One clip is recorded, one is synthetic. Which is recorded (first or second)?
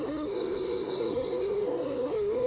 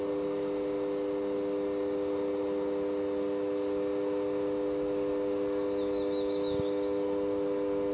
second